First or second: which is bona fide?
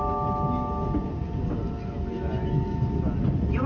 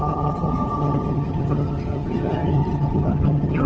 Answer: first